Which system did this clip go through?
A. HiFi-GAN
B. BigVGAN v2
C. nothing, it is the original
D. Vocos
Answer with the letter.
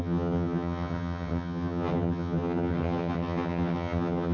A